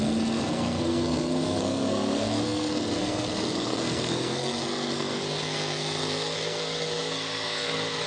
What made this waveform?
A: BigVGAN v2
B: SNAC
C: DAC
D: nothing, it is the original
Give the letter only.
B